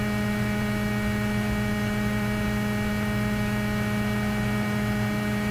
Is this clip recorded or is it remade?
remade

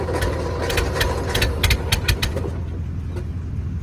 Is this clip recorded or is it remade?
recorded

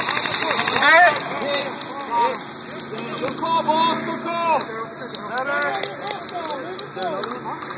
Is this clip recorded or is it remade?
recorded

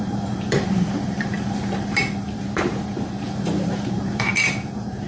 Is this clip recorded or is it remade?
remade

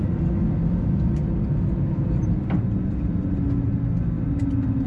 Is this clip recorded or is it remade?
recorded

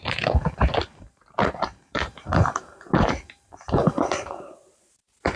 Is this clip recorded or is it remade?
remade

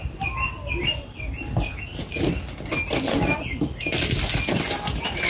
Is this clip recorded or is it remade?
recorded